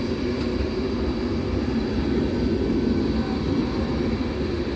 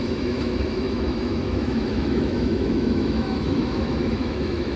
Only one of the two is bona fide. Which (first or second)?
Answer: first